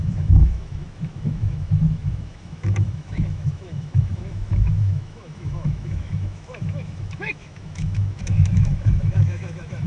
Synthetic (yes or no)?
yes